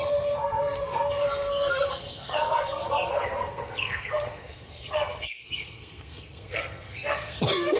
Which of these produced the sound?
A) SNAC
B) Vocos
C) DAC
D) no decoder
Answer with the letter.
A